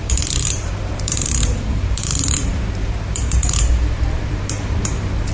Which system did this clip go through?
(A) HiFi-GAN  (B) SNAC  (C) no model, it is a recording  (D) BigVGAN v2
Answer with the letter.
D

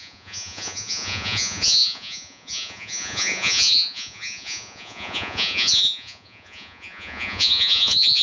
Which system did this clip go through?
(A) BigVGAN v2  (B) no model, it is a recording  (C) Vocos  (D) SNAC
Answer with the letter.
C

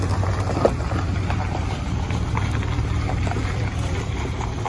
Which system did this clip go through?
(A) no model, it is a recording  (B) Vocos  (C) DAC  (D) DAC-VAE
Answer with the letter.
A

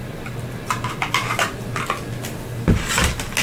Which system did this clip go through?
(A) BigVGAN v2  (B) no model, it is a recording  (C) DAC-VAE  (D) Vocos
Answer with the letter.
B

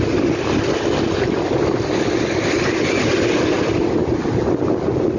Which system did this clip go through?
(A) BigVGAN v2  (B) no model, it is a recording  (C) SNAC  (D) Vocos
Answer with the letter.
B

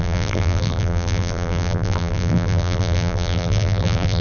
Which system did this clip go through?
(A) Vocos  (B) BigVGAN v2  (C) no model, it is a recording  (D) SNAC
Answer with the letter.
B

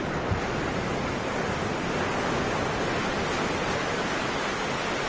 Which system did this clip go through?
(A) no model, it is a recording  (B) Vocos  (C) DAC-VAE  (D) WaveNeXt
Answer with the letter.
A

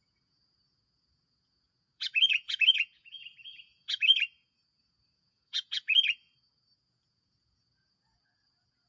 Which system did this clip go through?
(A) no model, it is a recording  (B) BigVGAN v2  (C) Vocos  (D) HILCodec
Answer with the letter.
C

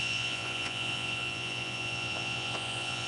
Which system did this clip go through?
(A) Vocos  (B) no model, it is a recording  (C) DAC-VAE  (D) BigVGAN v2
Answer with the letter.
A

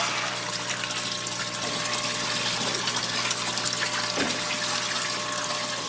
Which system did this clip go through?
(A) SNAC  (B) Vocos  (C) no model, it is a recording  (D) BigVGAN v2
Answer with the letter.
C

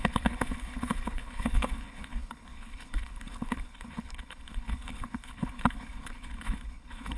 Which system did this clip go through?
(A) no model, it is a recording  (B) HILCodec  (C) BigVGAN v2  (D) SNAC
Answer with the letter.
B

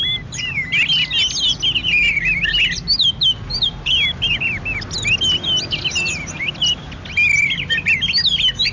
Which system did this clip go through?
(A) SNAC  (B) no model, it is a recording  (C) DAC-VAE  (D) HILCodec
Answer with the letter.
B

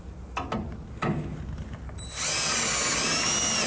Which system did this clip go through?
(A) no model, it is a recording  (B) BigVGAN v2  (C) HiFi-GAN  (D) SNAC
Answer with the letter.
A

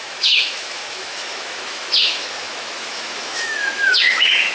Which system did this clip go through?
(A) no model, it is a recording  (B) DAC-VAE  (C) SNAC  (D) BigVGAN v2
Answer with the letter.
B